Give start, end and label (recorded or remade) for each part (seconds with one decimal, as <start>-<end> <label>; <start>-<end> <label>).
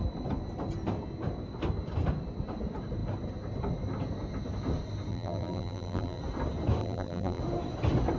0.0-5.1 recorded; 5.1-6.2 remade; 6.2-6.8 recorded; 6.8-7.4 remade; 7.4-8.2 recorded